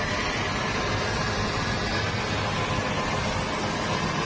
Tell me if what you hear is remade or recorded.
recorded